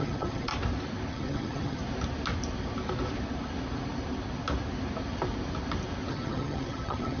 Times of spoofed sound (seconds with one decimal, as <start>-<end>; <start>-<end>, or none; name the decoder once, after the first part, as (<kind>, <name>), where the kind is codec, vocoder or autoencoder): 0.0-0.5 (vocoder, HiFi-GAN); 1.1-1.8; 6.1-7.2